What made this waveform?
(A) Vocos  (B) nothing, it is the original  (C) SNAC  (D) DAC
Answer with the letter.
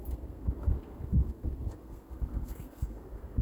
C